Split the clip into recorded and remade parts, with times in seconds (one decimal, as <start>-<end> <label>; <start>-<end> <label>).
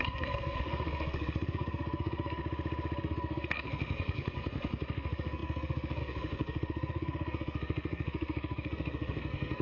0.0-2.4 remade; 2.4-3.0 recorded; 3.0-9.6 remade